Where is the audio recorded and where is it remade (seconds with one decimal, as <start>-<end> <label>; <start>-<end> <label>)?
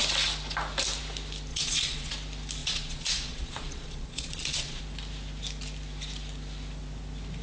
0.0-1.5 recorded; 1.5-2.1 remade; 2.1-2.6 recorded; 2.6-4.8 remade; 4.8-7.4 recorded